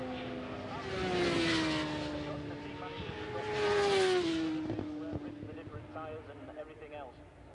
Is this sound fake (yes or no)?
no